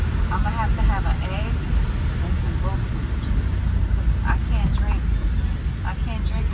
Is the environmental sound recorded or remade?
recorded